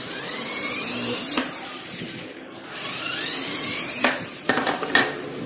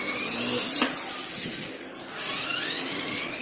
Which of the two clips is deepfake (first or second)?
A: first